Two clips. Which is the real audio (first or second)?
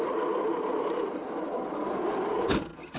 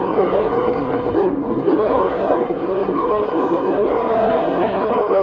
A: first